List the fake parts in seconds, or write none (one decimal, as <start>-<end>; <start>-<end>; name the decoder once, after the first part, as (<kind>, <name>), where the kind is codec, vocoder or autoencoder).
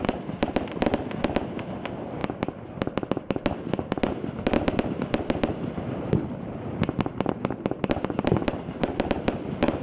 none